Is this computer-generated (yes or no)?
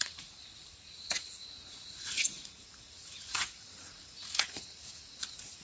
yes